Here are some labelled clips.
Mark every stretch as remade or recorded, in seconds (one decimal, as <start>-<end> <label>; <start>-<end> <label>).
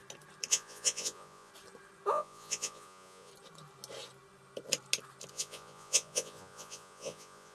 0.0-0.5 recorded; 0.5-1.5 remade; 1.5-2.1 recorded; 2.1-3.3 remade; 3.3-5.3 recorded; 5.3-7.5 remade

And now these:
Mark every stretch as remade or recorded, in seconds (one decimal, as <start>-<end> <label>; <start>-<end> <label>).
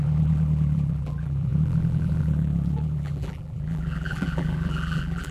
0.0-5.3 remade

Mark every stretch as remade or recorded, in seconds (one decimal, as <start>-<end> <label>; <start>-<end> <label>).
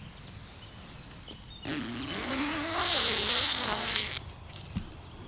0.0-3.5 recorded; 3.5-4.1 remade; 4.1-5.3 recorded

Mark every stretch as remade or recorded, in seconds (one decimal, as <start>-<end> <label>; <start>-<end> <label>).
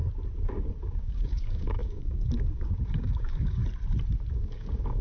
0.0-0.8 recorded; 0.8-3.6 remade; 3.6-4.3 recorded; 4.3-5.0 remade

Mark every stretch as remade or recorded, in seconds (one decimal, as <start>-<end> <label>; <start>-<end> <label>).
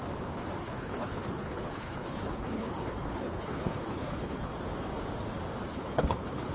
0.0-0.6 recorded; 0.6-4.5 remade; 4.5-5.7 recorded; 5.7-6.5 remade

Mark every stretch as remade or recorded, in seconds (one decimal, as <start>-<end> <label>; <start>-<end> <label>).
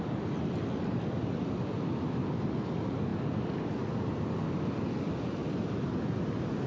0.0-6.7 recorded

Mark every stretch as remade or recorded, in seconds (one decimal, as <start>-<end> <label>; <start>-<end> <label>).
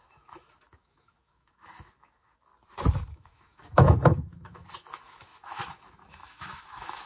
0.0-2.5 remade; 2.5-3.1 recorded; 3.1-7.1 remade